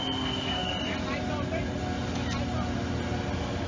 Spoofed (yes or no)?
no